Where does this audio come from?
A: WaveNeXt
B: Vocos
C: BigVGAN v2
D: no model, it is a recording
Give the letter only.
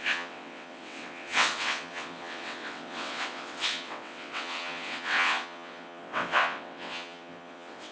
A